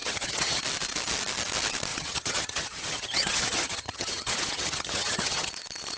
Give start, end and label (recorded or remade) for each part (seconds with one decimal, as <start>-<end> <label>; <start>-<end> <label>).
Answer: 0.0-0.6 remade; 0.6-1.9 recorded; 1.9-5.5 remade; 5.5-6.0 recorded